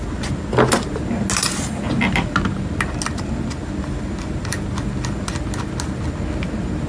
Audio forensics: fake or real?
real